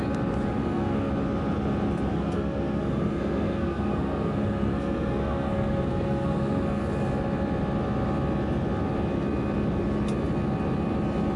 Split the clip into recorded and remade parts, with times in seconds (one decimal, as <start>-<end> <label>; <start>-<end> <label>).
0.0-0.6 recorded; 0.6-1.1 remade; 1.1-2.1 recorded; 2.1-6.8 remade; 6.8-11.4 recorded